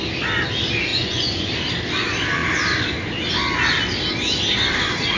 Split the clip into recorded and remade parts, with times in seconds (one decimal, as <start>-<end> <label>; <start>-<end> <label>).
0.0-0.9 recorded; 0.9-1.5 remade; 1.5-5.2 recorded